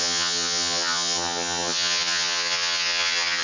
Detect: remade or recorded remade